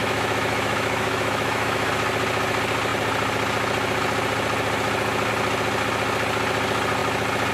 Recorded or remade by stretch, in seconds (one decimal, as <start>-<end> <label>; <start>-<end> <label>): 0.0-1.9 remade; 1.9-7.5 recorded